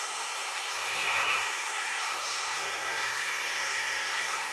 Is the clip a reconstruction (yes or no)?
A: yes